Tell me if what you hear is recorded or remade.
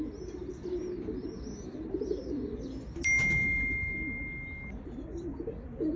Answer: recorded